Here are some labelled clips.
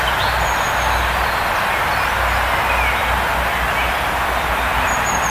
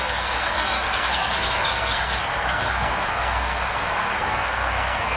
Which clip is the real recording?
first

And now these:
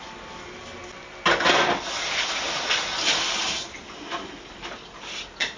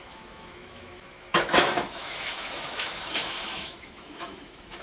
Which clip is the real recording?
first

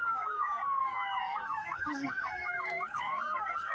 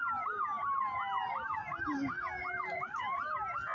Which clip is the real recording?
second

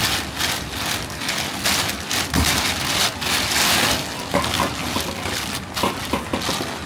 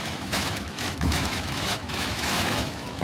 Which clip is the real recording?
first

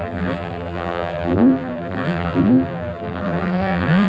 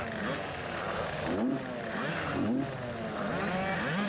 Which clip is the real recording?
second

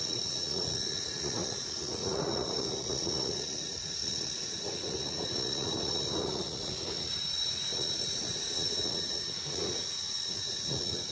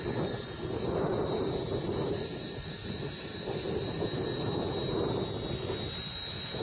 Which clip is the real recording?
second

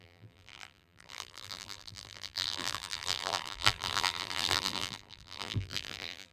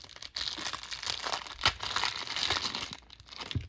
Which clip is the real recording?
second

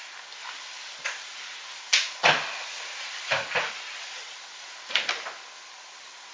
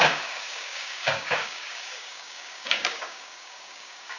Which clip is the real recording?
first